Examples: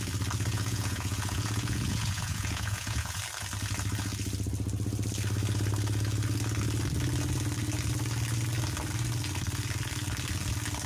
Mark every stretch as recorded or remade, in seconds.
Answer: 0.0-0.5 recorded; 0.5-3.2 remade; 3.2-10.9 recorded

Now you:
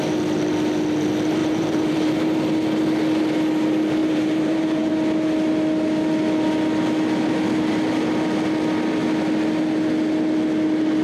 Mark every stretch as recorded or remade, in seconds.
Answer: 0.0-1.4 recorded; 1.4-2.1 remade; 2.1-4.0 recorded; 4.0-4.9 remade; 4.9-11.0 recorded

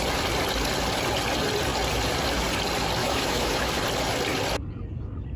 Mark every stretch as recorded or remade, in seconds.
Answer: 0.0-3.0 recorded; 3.0-3.7 remade; 3.7-5.4 recorded

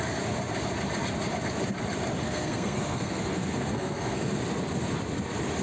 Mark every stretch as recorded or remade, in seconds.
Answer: 0.0-2.2 recorded; 2.2-4.4 remade; 4.4-5.6 recorded

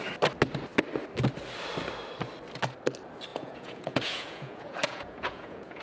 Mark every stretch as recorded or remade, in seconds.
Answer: 0.0-3.3 recorded; 3.3-5.8 remade

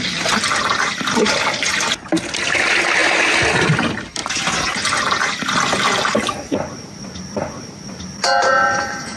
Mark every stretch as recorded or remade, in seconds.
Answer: 0.0-8.4 recorded; 8.4-9.2 remade

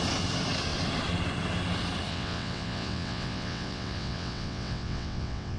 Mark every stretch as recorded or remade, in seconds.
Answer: 0.0-2.1 recorded; 2.1-5.6 remade